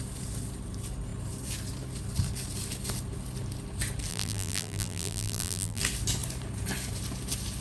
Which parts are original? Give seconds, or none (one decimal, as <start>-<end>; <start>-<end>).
0.0-4.1; 5.8-7.6